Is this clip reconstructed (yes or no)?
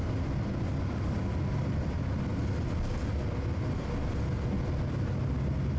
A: no